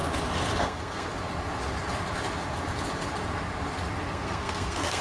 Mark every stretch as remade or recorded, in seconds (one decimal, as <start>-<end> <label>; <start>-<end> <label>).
0.0-0.6 recorded; 0.6-1.1 remade; 1.1-4.1 recorded; 4.1-5.0 remade